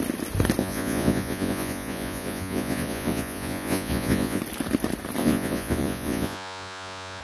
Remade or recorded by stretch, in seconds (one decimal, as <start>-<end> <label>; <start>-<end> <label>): 0.0-0.6 recorded; 0.6-4.4 remade; 4.4-5.2 recorded; 5.2-7.2 remade